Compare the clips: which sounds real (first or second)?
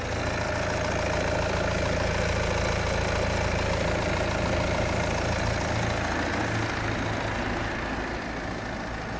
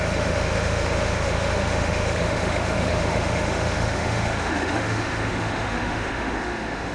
first